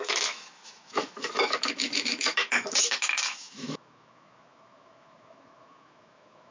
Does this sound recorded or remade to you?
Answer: remade